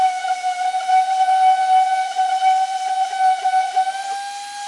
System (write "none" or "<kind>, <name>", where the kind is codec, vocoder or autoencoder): none